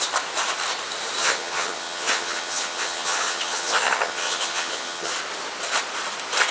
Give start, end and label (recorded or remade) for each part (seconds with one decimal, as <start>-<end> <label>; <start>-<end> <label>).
0.0-1.2 recorded; 1.2-5.1 remade; 5.1-6.5 recorded